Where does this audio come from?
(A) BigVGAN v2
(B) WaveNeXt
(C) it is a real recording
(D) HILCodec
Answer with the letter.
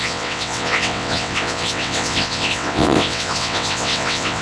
B